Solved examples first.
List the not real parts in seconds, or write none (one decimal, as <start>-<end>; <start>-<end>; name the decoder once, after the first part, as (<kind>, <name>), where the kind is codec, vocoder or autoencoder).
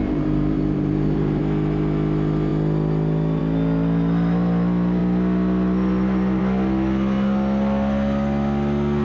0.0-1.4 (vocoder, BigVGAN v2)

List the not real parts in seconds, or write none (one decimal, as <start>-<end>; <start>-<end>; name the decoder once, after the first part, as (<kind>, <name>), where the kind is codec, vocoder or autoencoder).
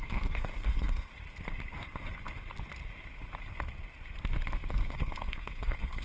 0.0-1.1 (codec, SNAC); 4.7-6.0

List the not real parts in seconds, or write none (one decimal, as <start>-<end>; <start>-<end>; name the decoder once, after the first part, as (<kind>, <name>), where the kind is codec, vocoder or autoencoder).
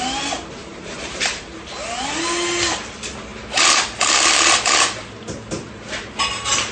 0.6-2.0 (vocoder, BigVGAN v2)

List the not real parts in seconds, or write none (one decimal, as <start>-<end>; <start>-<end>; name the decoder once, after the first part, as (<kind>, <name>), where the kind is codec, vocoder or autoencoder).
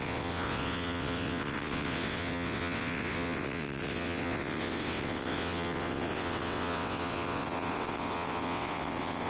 0.0-9.3 (vocoder, WaveNeXt)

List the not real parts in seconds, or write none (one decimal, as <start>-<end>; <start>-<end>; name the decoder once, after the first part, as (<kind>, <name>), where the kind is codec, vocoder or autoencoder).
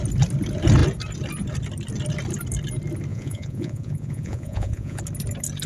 3.1-5.0 (vocoder, Vocos)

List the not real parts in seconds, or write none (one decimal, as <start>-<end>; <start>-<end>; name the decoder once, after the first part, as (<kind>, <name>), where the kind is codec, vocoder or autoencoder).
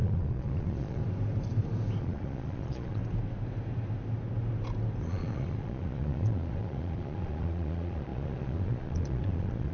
0.0-1.0 (vocoder, Vocos); 2.0-3.0; 5.0-9.7